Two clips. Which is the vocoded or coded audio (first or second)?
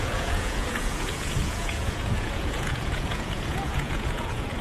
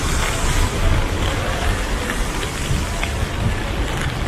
first